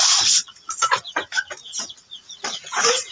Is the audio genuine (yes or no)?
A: no